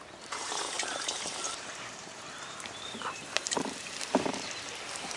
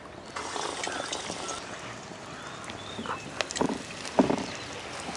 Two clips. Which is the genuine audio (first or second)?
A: second